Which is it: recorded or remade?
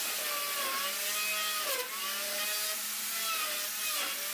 recorded